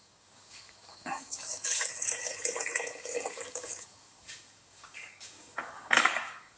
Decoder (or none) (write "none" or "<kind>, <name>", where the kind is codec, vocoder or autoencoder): codec, DAC